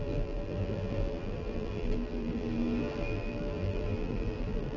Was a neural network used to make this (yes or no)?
yes